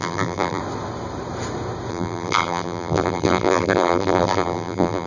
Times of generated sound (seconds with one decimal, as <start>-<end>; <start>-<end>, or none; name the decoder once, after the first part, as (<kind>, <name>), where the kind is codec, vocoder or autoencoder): 0.0-0.6 (vocoder, BigVGAN v2); 1.9-5.1